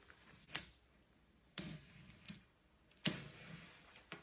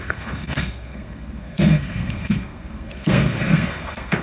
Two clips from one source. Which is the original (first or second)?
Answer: first